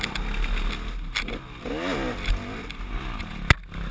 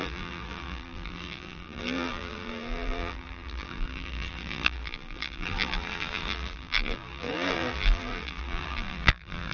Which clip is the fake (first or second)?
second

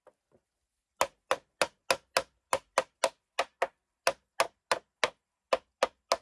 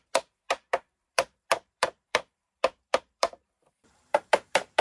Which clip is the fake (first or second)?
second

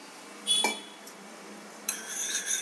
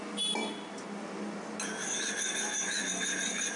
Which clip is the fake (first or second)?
first